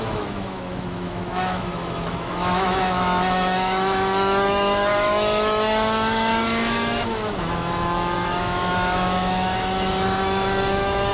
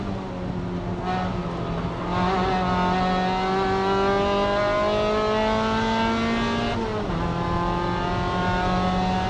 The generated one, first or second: first